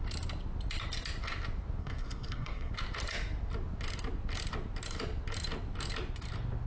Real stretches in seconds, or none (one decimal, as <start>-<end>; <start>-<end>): 0.0-1.8; 2.7-6.7